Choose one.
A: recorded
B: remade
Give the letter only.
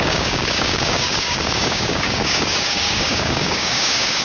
B